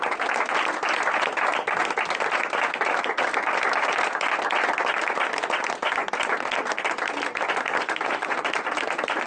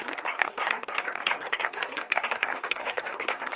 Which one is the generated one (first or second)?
second